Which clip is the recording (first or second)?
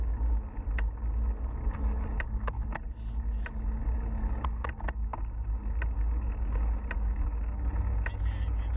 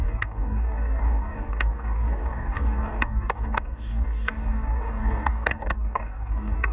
first